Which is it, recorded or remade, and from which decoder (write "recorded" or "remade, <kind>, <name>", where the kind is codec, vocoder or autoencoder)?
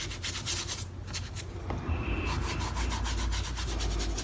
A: recorded